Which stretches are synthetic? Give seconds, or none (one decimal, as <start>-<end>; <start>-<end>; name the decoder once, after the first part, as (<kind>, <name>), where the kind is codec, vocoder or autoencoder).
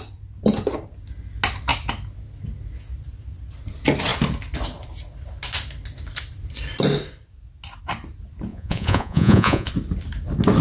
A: 8.5-9.7 (vocoder, Vocos)